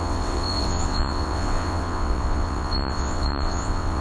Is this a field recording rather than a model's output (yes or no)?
no